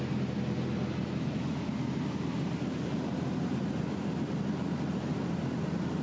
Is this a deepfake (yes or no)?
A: no